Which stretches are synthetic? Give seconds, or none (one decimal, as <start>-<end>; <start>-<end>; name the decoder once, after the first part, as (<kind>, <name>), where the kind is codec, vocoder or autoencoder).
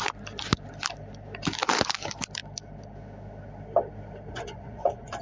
4.3-5.2 (vocoder, Vocos)